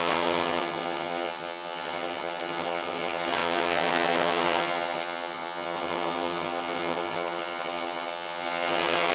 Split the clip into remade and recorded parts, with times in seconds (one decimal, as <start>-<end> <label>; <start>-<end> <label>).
0.0-9.1 remade